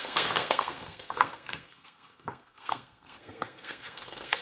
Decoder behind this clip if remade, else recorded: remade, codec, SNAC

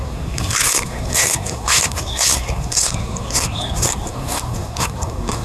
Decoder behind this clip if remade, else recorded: remade, codec, SNAC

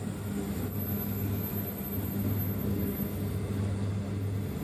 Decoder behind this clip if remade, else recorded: recorded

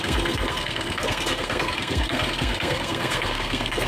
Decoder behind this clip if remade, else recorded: remade, codec, SNAC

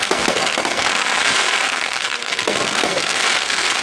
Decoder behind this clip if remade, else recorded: remade, codec, SNAC